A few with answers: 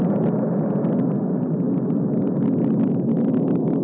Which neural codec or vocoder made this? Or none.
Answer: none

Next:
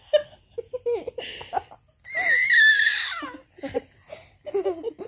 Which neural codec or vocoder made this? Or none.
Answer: none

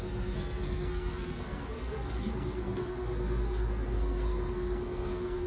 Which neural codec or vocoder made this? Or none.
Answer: codec, SNAC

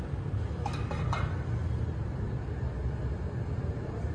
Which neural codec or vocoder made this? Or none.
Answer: none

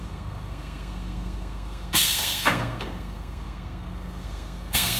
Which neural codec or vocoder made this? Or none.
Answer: codec, SNAC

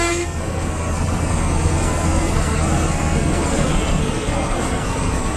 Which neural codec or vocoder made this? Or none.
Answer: codec, SNAC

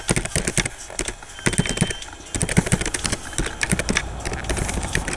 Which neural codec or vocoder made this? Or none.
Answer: none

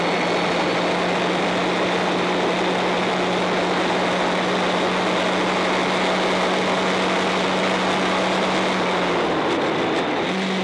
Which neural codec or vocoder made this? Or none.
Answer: none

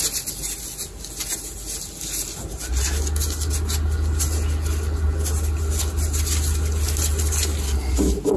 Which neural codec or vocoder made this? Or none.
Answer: none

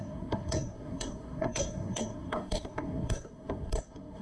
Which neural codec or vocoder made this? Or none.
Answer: codec, SNAC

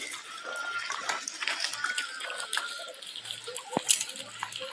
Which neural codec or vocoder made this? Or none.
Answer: none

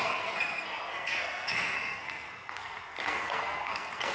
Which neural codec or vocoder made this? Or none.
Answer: codec, SNAC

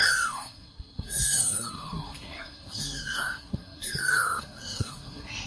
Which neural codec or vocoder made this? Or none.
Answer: codec, SNAC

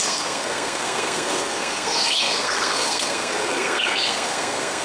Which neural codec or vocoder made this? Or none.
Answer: codec, SNAC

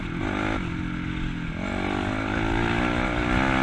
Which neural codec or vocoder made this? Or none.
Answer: none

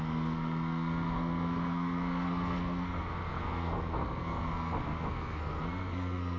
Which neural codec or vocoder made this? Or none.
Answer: codec, SNAC